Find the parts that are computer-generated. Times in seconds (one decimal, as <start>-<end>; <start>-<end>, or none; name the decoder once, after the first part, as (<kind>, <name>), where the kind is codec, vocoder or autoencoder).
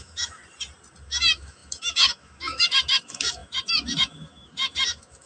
0.0-0.4 (autoencoder, DAC-VAE); 1.0-5.3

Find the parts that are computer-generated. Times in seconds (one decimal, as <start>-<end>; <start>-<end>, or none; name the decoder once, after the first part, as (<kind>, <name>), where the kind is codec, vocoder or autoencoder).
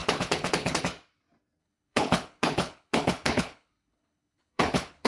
0.0-0.8 (codec, HILCodec); 1.6-5.1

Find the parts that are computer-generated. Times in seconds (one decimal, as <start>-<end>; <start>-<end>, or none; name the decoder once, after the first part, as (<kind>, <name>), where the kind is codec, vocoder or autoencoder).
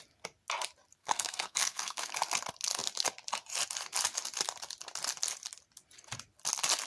1.0-2.1 (codec, SNAC)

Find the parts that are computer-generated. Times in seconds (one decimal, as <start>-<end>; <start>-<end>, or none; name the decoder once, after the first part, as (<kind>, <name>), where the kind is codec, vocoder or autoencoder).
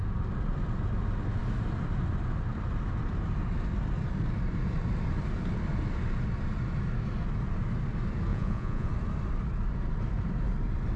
8.3-8.9 (vocoder, Vocos)